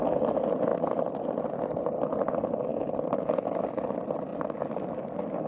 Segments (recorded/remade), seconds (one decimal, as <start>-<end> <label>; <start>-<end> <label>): 0.0-5.5 recorded